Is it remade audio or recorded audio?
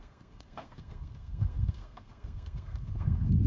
remade